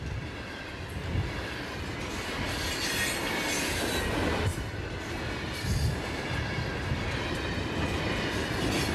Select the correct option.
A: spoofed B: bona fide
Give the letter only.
B